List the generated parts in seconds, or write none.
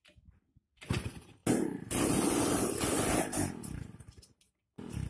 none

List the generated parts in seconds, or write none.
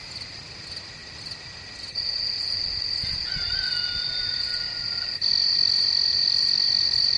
none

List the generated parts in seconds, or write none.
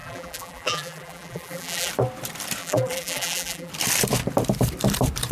0.0-1.9 (vocoder, BigVGAN v2); 2.6-3.7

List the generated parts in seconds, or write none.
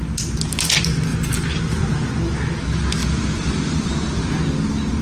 3.0-4.3 (vocoder, BigVGAN v2)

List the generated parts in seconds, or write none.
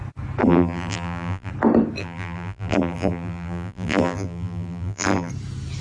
0.4-1.5 (vocoder, BigVGAN v2); 2.0-5.3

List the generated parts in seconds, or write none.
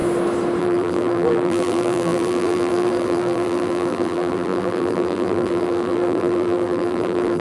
0.6-7.4 (vocoder, BigVGAN v2)